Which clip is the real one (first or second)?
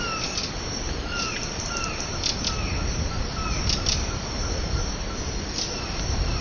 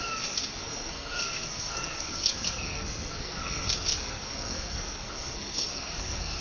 first